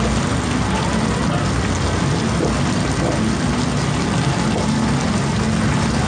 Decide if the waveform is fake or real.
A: real